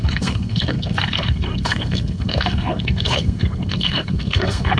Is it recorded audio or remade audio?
remade